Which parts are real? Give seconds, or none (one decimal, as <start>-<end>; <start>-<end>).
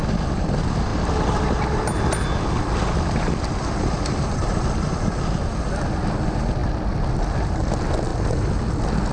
0.0-9.1